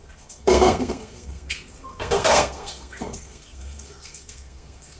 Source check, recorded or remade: remade